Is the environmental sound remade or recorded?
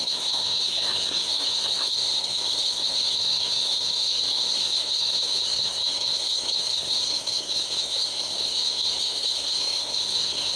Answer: remade